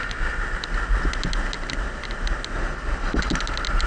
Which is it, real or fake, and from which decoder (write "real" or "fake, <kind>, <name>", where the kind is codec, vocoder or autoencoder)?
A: real